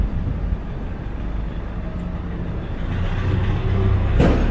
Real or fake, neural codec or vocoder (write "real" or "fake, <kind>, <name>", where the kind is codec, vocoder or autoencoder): real